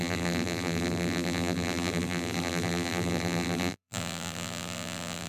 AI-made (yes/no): yes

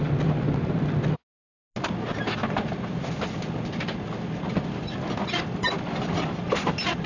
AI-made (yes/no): no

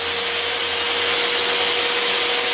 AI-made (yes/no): no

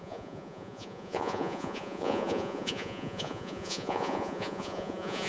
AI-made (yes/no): yes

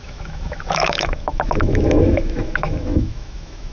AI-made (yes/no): yes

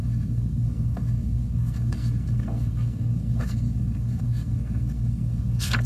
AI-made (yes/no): yes